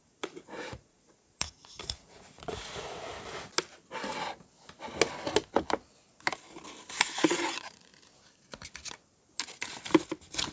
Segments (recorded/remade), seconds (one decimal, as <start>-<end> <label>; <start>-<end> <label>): 0.0-3.1 remade; 3.1-6.9 recorded; 6.9-7.9 remade; 7.9-10.5 recorded